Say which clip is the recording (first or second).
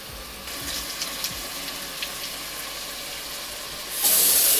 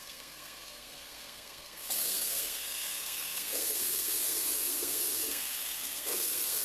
first